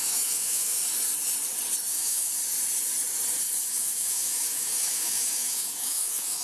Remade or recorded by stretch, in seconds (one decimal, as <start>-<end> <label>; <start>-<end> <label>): 0.0-0.8 remade; 0.8-1.9 recorded; 1.9-2.3 remade; 2.3-3.7 recorded; 3.7-6.4 remade